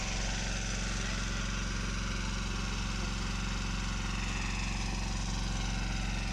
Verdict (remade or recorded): recorded